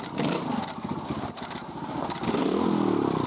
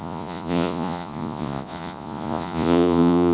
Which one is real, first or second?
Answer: first